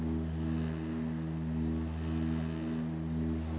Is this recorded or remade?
recorded